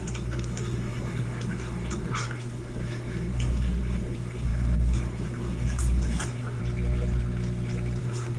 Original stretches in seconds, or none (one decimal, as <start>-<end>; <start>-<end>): 6.6-8.0